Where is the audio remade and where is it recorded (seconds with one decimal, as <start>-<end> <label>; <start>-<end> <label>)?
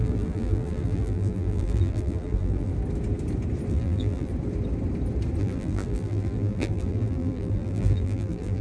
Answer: 0.0-2.7 remade; 2.7-3.7 recorded; 3.7-4.3 remade; 4.3-5.4 recorded; 5.4-8.6 remade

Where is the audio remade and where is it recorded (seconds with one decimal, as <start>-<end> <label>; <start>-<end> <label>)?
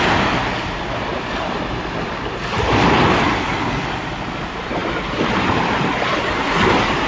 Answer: 0.0-1.1 recorded; 1.1-1.8 remade; 1.8-4.8 recorded; 4.8-6.2 remade; 6.2-7.1 recorded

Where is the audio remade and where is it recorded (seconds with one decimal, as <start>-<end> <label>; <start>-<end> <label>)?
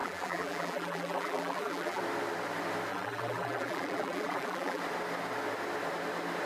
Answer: 0.0-2.0 remade; 2.0-2.9 recorded; 2.9-4.8 remade; 4.8-6.5 recorded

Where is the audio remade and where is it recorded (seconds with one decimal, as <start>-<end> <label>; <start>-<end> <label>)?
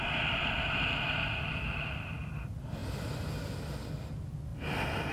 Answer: 0.0-2.8 remade; 2.8-3.9 recorded; 3.9-4.5 remade; 4.5-5.1 recorded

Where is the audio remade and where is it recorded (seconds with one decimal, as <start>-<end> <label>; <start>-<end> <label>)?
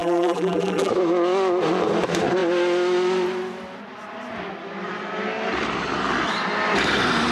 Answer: 0.0-0.9 remade; 0.9-7.3 recorded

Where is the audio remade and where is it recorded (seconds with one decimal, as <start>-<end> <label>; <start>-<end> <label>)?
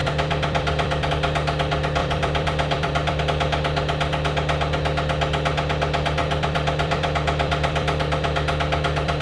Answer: 0.0-1.1 remade; 1.1-2.0 recorded; 2.0-3.2 remade; 3.2-6.2 recorded; 6.2-9.2 remade